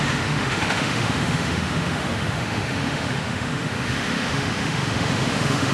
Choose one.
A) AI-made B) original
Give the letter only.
A